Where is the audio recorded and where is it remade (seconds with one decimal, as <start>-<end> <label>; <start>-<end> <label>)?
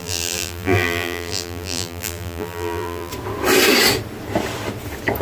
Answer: 0.0-3.1 remade; 3.1-5.2 recorded